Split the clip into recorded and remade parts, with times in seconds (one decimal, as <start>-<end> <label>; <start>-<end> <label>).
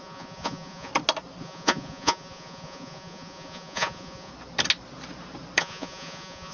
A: 0.0-0.9 remade; 0.9-1.4 recorded; 1.4-4.3 remade; 4.3-5.6 recorded; 5.6-6.5 remade